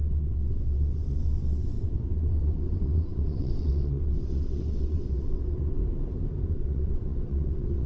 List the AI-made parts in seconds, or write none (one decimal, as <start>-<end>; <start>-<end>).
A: 0.0-5.8; 6.5-7.9